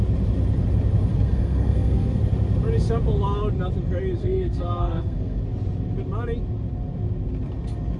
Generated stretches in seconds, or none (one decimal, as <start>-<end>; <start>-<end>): 1.1-2.2; 4.2-5.4

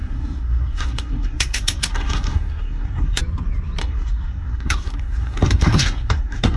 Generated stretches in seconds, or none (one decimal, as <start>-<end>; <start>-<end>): 0.0-3.2; 3.8-6.6

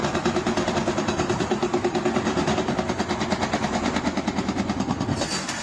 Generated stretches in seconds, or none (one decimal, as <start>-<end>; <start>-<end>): none

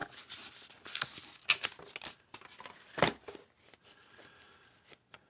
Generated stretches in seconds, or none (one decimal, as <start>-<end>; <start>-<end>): none

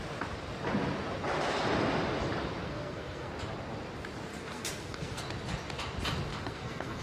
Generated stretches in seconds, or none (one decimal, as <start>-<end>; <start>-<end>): 2.6-3.3; 4.3-5.2; 6.3-7.0

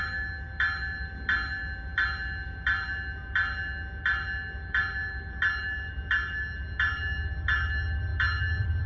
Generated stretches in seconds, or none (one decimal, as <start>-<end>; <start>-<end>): none

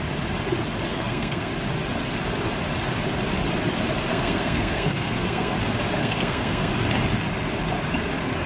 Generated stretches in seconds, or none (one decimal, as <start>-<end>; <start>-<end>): 0.9-1.5; 4.1-5.5; 6.0-6.7

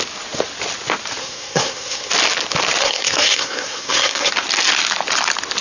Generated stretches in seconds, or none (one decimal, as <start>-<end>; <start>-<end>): 1.2-2.1; 2.8-4.3